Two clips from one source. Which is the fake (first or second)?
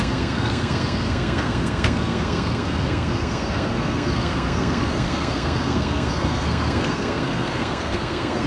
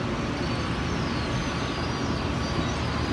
first